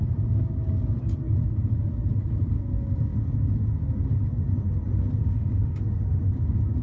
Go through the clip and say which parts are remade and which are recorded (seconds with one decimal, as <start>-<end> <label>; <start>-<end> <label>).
0.0-5.2 recorded; 5.2-5.8 remade; 5.8-6.8 recorded